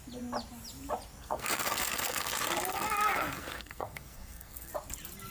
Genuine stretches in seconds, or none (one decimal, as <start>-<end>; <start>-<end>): 0.0-1.2; 2.3-2.7; 4.7-5.3